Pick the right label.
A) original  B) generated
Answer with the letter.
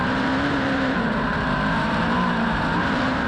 B